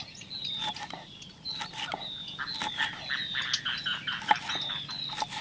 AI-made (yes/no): no